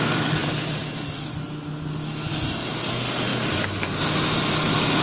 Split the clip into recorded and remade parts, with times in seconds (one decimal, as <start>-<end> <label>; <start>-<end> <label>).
0.0-5.0 recorded